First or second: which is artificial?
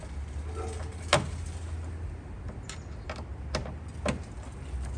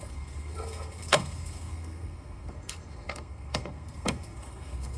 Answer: second